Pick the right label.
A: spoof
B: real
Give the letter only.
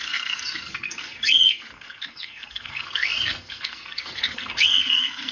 A